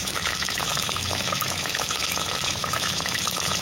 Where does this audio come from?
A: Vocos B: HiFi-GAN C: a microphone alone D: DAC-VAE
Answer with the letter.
D